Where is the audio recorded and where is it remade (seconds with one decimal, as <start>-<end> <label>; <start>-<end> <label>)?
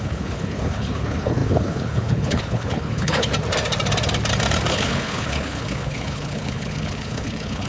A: 0.0-3.3 remade; 3.3-4.7 recorded; 4.7-7.7 remade